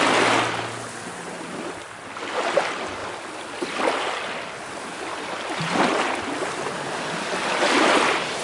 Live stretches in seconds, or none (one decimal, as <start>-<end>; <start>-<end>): 0.0-8.4